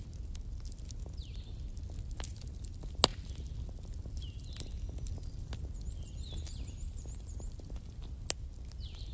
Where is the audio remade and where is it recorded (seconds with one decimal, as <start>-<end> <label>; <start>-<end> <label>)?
0.0-9.1 recorded